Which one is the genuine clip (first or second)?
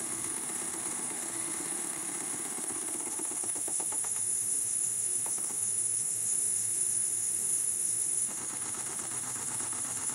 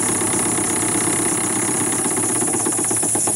second